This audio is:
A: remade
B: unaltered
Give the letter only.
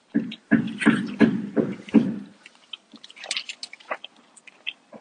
B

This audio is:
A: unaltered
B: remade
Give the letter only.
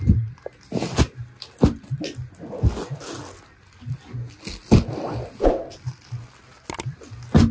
A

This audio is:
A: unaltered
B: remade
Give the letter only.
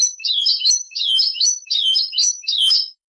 B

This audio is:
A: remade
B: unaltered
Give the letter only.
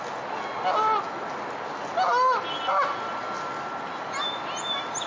B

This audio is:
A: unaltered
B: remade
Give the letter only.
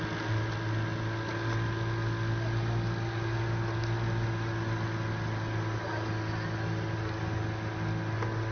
A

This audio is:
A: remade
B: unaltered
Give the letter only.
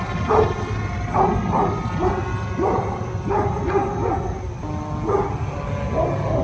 B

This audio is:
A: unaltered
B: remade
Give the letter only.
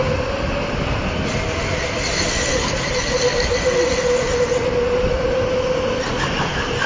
A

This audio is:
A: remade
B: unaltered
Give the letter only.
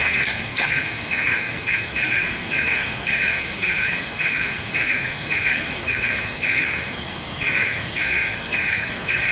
A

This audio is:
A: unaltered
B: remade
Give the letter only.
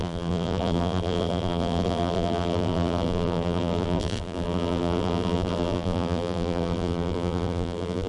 B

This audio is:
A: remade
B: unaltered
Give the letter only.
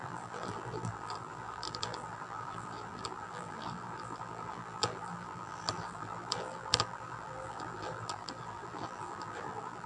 A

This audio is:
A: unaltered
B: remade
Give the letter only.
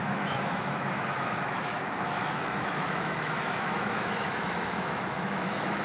B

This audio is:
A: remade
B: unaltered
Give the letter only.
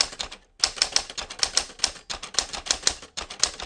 B